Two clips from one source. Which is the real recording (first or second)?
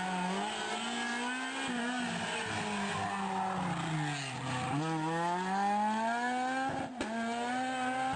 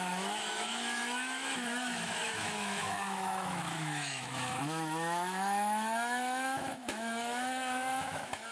first